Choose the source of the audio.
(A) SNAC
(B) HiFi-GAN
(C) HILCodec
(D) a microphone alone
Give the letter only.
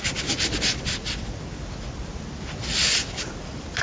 D